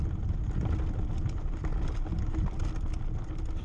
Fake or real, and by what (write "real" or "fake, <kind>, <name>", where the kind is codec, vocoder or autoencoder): real